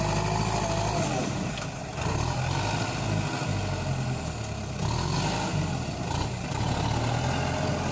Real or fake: real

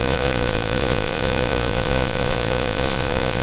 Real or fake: fake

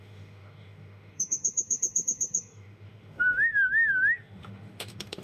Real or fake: fake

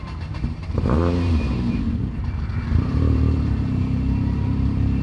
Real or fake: fake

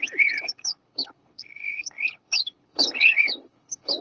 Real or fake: fake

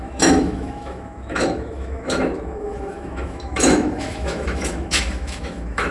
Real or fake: fake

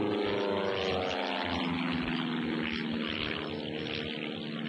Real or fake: real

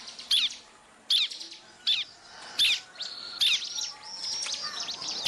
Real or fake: real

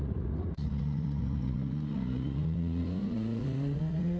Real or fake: fake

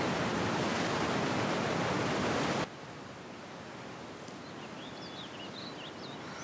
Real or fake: real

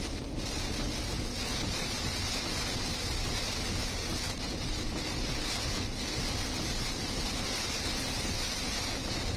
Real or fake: real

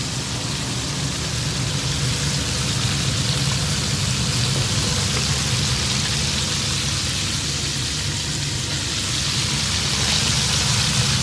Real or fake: real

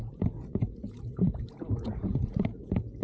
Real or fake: fake